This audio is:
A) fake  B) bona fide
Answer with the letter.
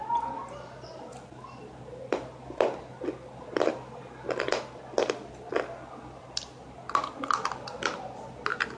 B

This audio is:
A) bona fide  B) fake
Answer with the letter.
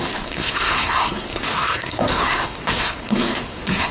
B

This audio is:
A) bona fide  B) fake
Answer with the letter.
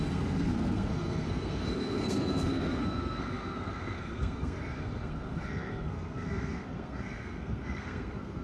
B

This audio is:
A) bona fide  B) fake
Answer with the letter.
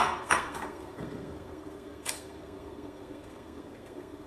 B